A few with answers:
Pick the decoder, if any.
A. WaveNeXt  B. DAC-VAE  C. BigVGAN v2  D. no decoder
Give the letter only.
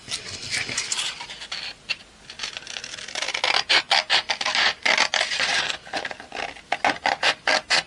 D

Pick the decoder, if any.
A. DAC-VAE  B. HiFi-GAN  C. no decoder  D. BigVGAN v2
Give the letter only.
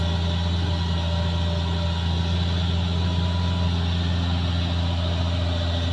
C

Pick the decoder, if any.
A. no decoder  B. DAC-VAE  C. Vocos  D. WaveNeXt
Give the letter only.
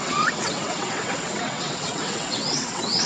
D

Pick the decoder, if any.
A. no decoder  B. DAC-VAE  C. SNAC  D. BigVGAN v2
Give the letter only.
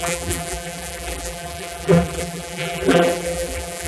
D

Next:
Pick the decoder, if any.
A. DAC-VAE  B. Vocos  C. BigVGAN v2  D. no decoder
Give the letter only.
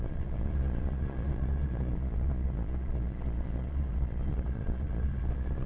B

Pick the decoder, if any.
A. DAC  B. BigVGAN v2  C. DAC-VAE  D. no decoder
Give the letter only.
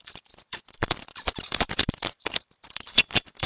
B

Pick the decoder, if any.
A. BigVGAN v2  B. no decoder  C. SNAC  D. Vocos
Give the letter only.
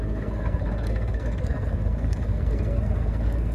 C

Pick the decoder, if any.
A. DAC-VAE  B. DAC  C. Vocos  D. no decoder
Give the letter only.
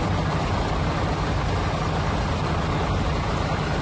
D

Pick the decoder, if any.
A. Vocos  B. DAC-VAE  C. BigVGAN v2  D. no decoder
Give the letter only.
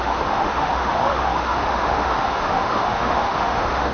B